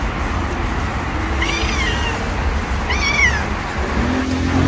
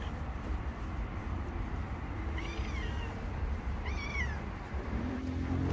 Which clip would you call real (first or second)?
first